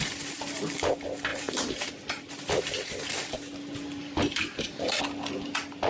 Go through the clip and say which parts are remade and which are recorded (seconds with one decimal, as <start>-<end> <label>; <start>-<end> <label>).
0.0-1.3 recorded; 1.3-1.9 remade; 1.9-4.0 recorded; 4.0-5.0 remade; 5.0-5.9 recorded